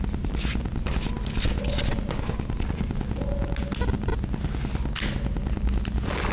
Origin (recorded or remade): recorded